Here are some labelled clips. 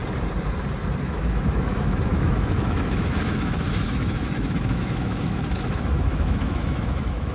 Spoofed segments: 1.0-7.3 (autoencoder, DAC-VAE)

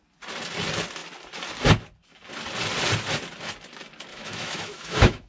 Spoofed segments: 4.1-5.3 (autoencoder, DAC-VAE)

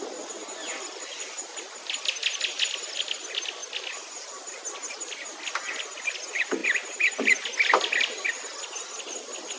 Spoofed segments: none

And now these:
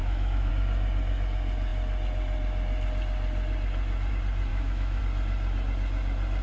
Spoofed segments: 0.0-0.5 (autoencoder, DAC-VAE); 4.5-5.0